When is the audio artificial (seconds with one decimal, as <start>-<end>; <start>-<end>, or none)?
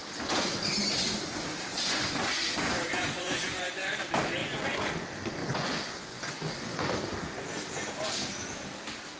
1.7-4.0; 4.4-4.9; 5.4-6.8